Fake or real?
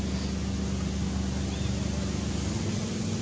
real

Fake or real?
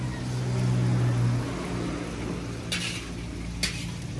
real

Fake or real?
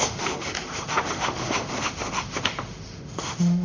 fake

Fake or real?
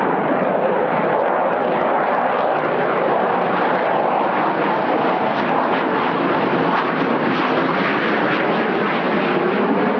real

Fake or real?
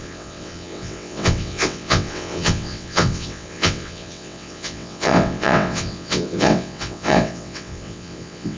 fake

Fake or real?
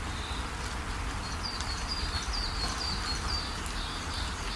real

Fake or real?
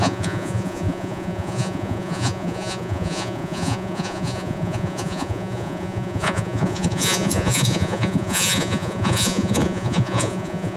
fake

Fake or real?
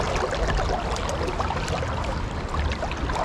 real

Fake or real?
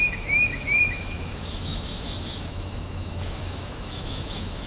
fake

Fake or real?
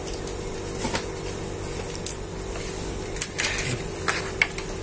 real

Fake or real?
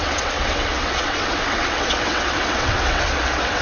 fake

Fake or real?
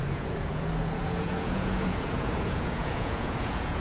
fake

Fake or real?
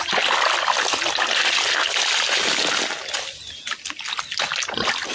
real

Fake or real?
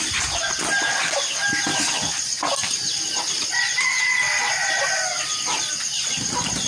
real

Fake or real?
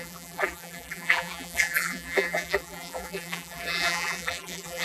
fake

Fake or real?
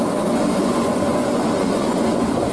fake